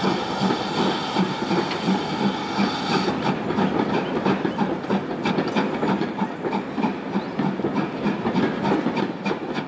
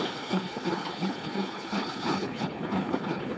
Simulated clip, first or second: second